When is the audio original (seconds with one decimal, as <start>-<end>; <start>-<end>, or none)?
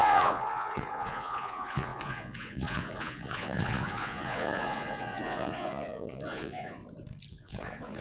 6.8-7.3